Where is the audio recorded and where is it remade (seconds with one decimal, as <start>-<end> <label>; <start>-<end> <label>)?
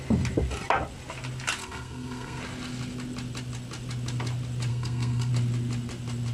0.0-1.6 recorded; 1.6-2.4 remade; 2.4-4.7 recorded; 4.7-5.3 remade; 5.3-6.3 recorded